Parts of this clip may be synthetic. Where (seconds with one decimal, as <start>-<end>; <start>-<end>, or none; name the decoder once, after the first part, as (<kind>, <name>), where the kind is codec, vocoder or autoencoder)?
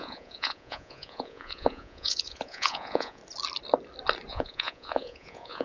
0.0-3.2 (vocoder, Vocos); 4.3-5.6